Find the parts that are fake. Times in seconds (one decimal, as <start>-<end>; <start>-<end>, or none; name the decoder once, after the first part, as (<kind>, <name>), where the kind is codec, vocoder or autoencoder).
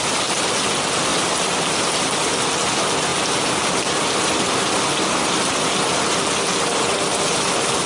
1.1-1.8 (vocoder, BigVGAN v2); 3.1-5.3